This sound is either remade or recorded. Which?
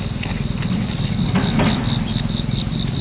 recorded